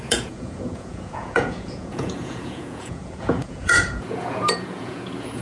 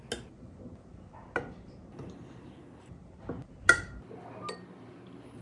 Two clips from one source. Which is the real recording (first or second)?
second